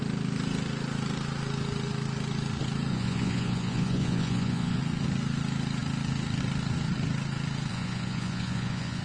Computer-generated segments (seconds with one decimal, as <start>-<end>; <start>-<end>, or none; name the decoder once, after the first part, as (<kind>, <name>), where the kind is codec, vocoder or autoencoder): 2.9-4.8 (vocoder, Vocos); 7.7-9.0